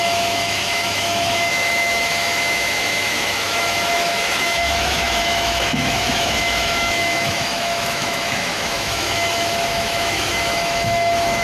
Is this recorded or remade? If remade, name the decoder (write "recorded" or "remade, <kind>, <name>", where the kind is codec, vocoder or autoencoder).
remade, autoencoder, DAC-VAE